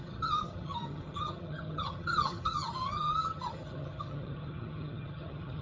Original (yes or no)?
no